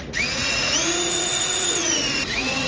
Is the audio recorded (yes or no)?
no